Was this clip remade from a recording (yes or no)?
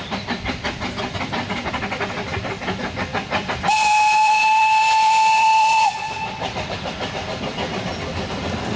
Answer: yes